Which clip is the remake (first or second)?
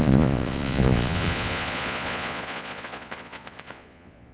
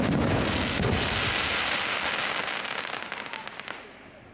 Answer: first